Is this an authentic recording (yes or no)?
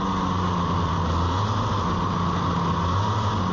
yes